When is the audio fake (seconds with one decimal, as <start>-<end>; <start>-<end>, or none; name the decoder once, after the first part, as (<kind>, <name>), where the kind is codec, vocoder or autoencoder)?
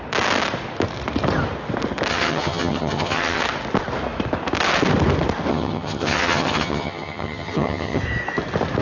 2.1-3.4 (vocoder, HiFi-GAN); 5.5-8.0